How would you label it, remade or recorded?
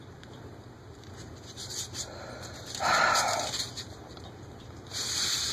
remade